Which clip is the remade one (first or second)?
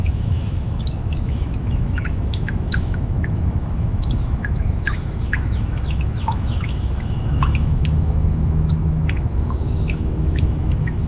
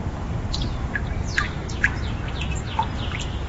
first